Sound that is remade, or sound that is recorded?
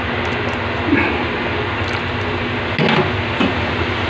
recorded